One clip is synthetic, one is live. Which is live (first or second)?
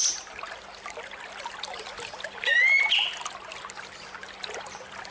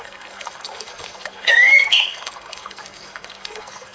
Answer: first